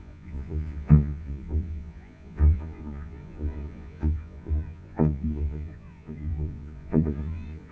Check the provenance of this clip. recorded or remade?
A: remade